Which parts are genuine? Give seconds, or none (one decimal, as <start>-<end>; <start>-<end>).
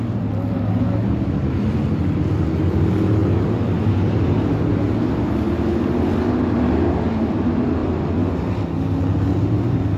0.0-3.2; 4.5-10.0